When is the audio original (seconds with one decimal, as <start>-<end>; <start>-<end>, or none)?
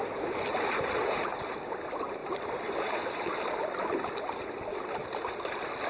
0.0-0.5; 1.4-5.9